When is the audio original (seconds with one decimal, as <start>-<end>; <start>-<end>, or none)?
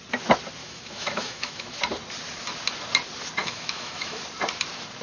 0.0-0.6; 1.8-3.4; 4.2-5.0